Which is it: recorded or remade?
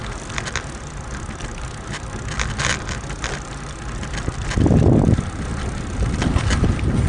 recorded